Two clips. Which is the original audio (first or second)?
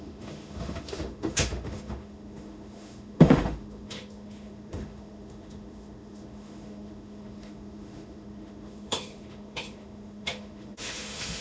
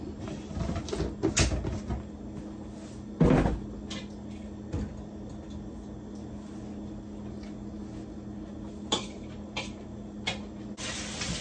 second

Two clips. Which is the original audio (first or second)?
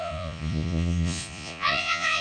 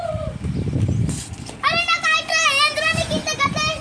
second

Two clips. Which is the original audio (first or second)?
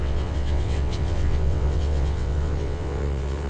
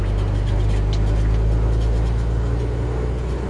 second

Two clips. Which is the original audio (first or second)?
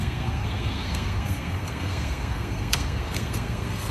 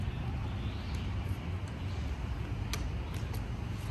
second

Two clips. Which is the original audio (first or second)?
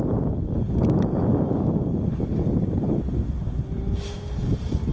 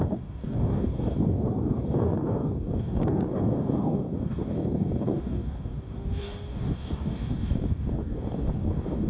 first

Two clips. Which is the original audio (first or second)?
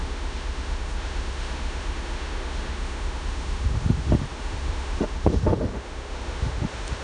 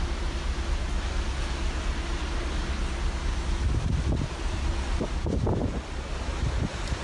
second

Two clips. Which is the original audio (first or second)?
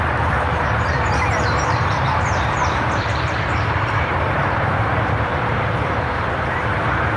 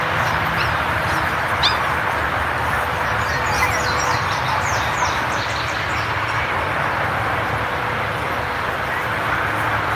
second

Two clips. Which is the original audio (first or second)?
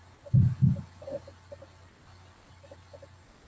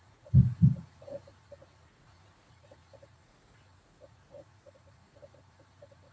first